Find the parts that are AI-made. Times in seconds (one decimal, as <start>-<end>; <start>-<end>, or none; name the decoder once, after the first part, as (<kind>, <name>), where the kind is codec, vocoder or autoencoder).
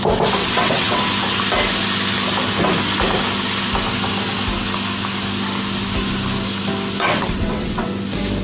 0.4-1.0 (vocoder, WaveNeXt); 7.0-7.9